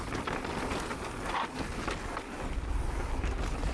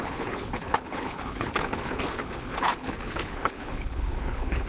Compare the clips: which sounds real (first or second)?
first